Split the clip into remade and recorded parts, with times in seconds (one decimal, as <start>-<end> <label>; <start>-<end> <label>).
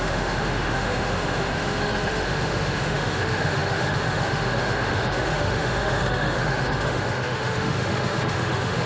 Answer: 0.0-8.9 remade